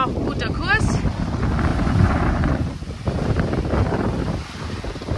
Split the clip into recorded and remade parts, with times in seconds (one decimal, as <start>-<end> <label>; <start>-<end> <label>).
0.0-1.7 recorded; 1.7-2.9 remade; 2.9-5.2 recorded

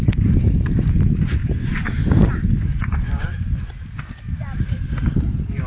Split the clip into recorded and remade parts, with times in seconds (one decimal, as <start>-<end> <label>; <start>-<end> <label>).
0.0-1.4 recorded; 1.4-2.3 remade; 2.3-2.7 recorded; 2.7-3.6 remade; 3.6-5.7 recorded